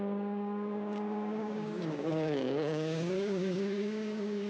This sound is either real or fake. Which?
fake